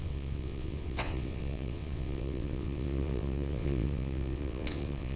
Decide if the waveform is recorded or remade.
remade